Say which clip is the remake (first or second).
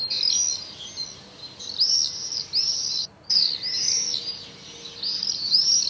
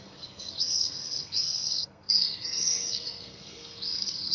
second